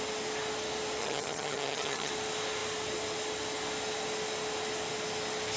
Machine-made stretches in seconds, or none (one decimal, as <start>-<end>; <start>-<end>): 1.0-2.1